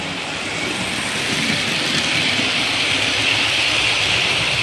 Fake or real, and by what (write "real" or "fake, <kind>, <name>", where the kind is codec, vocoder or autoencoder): real